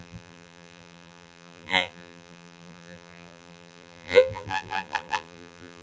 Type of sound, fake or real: fake